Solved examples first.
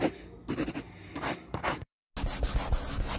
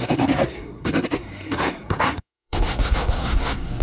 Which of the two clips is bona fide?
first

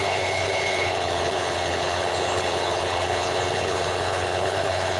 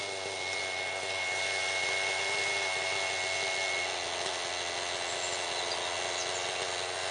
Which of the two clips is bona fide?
second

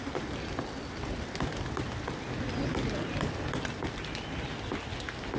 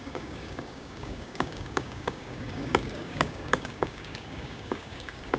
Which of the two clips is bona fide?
first